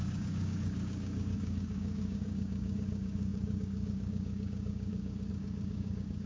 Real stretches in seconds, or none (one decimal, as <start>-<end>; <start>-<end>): none